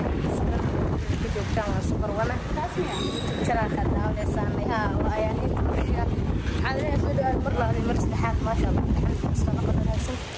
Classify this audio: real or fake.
real